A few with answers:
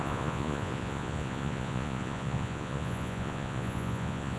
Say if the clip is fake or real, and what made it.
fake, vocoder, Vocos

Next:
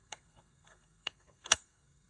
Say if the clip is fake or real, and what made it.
fake, codec, SNAC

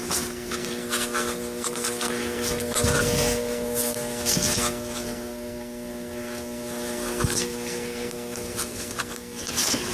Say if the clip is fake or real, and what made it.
fake, codec, SNAC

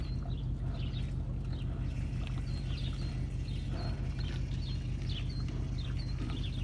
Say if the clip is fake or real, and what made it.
real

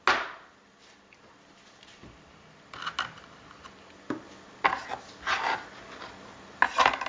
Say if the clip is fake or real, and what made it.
real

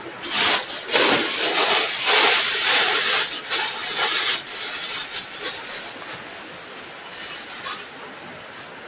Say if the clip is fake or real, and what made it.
real